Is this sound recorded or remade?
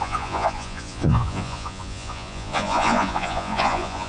remade